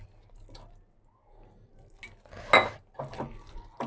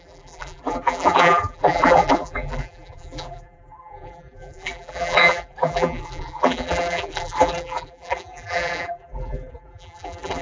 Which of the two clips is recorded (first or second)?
first